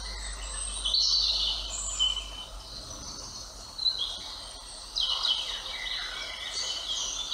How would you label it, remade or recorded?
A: recorded